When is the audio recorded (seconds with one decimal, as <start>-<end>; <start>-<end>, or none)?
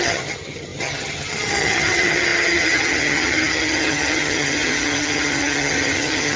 none